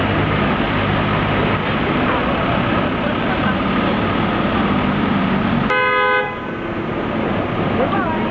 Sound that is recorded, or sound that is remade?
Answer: recorded